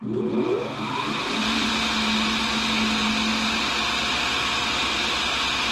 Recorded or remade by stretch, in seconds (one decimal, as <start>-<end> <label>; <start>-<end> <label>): 0.0-5.7 recorded